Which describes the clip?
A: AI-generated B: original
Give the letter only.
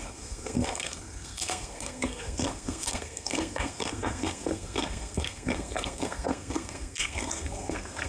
A